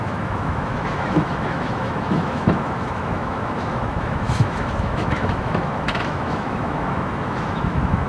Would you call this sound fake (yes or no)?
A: yes